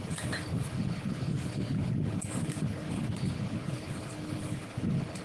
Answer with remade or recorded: remade